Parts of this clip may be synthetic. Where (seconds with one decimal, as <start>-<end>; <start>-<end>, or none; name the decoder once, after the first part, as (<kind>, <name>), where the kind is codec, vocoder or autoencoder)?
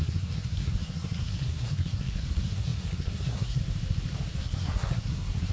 0.0-3.6 (codec, SNAC); 4.4-5.5